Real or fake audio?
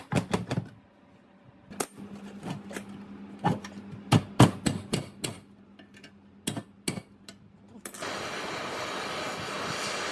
real